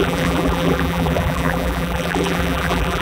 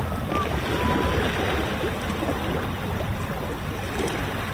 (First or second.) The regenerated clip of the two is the first